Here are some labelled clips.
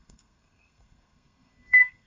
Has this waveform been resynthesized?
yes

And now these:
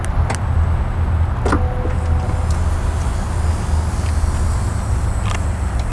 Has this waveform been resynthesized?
no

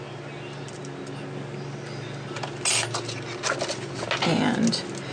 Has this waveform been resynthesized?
no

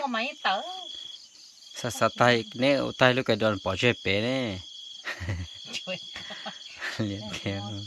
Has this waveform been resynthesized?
no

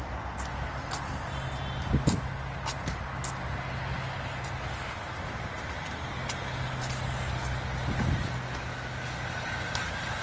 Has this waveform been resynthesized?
no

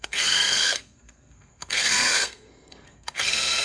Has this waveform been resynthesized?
yes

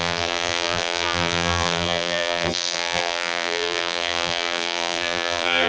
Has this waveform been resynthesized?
yes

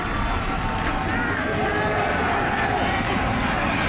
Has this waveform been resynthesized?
no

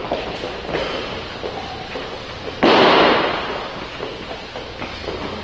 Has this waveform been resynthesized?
no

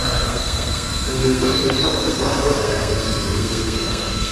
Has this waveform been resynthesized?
yes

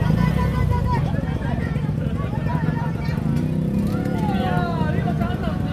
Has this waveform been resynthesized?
no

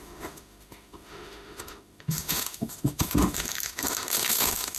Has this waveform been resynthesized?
yes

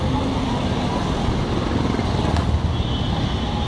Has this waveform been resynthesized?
no